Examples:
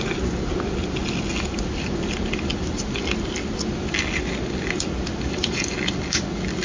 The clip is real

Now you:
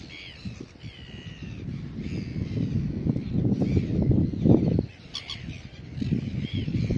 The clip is real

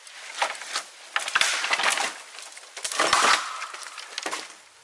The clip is real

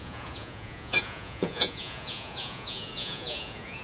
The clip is fake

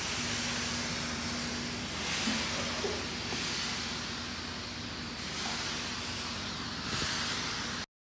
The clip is real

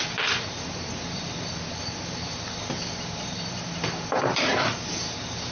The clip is fake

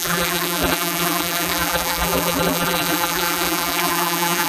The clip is fake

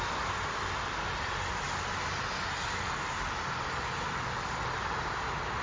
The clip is real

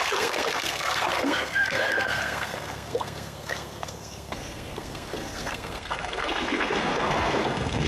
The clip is fake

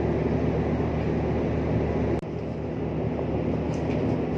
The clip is real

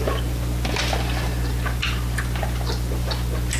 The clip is real